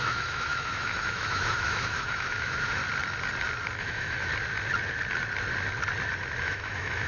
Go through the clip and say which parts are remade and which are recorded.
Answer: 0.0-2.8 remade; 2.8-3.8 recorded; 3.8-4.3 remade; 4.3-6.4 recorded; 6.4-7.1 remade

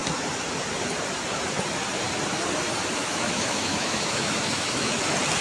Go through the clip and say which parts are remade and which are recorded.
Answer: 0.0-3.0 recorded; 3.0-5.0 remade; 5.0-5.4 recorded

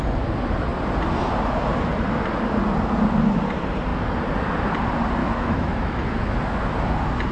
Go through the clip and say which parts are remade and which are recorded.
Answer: 0.0-5.2 recorded; 5.2-6.0 remade; 6.0-7.3 recorded